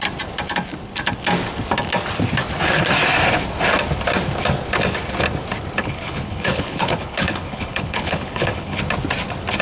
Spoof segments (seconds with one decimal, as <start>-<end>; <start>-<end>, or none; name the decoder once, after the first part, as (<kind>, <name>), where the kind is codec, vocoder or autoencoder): 5.8-8.8 (codec, HILCodec)